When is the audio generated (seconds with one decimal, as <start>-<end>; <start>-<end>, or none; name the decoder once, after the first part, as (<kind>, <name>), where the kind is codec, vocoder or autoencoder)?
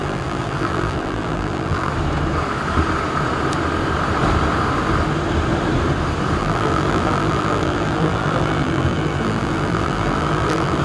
0.0-1.9 (vocoder, BigVGAN v2); 6.4-10.8